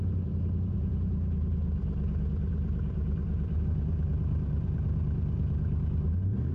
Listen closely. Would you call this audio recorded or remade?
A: remade